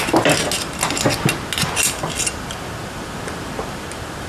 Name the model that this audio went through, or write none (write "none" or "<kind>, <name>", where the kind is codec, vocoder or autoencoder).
none